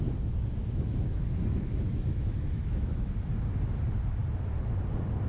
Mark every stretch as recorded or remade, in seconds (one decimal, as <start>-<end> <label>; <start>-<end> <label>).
0.0-0.6 recorded; 0.6-3.1 remade; 3.1-5.3 recorded